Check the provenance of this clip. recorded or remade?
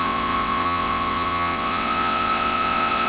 remade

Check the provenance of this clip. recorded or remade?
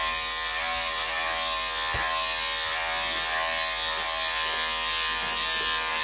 recorded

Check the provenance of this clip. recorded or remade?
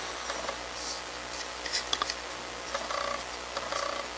recorded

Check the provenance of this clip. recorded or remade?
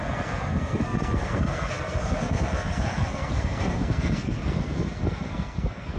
remade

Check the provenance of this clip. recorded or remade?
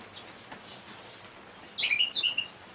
recorded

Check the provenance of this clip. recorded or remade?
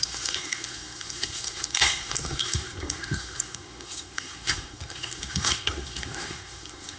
remade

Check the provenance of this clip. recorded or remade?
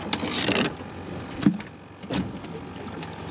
recorded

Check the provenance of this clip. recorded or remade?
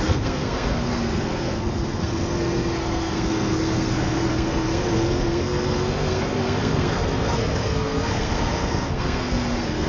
remade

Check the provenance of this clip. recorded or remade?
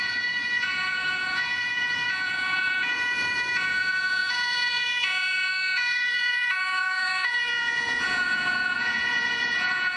remade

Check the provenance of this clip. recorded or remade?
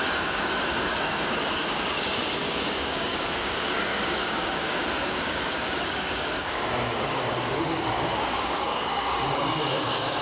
remade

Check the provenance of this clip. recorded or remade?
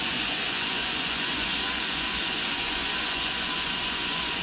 remade